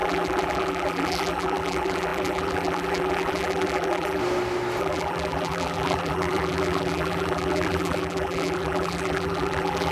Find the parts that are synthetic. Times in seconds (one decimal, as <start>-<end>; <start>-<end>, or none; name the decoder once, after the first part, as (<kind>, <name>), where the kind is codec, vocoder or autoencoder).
0.0-4.2 (vocoder, BigVGAN v2); 4.8-9.9